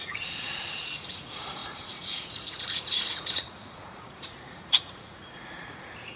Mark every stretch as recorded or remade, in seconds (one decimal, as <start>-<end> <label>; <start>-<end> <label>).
0.0-6.2 remade